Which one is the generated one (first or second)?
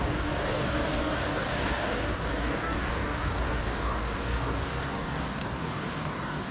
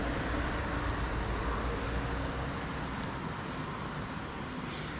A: first